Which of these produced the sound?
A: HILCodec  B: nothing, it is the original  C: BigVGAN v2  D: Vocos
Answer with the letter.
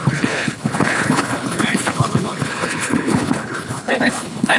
A